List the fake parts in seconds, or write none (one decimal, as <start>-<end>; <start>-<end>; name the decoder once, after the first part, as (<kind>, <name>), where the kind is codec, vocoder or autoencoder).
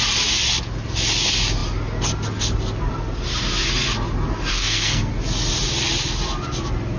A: 4.5-5.1 (codec, SNAC)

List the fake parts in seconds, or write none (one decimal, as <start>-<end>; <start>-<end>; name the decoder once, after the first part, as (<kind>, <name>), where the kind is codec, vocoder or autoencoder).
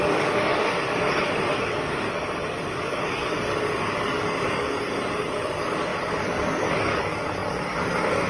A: 0.0-8.3 (codec, DAC)